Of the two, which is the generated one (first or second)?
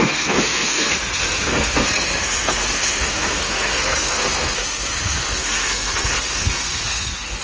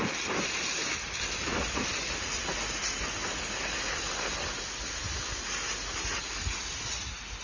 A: first